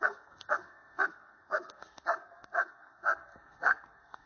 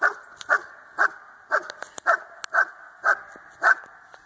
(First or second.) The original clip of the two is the second